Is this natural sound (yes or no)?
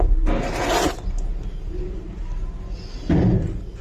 yes